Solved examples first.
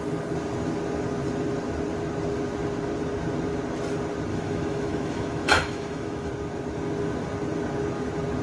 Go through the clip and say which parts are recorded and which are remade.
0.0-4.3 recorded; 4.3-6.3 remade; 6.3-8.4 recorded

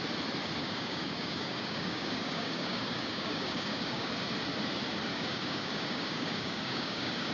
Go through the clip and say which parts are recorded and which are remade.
0.0-0.6 recorded; 0.6-4.1 remade; 4.1-5.1 recorded; 5.1-7.3 remade

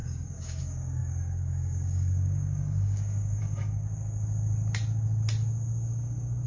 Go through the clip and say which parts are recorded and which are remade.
0.0-3.8 remade; 3.8-6.5 recorded

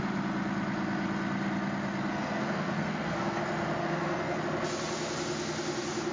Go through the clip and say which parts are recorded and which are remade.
0.0-2.1 recorded; 2.1-3.4 remade; 3.4-3.8 recorded; 3.8-4.4 remade; 4.4-6.1 recorded

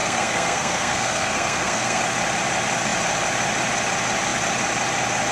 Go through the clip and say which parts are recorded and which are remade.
0.0-2.0 remade; 2.0-5.3 recorded

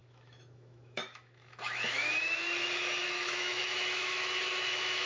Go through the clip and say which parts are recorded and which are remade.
0.0-5.1 remade

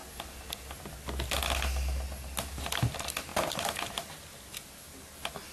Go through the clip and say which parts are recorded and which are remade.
0.0-5.5 recorded